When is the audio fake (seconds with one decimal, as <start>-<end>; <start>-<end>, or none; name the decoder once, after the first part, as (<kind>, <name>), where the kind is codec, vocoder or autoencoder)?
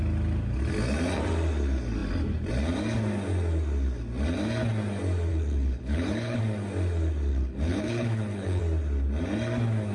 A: 5.3-6.4 (codec, HILCodec); 7.3-8.6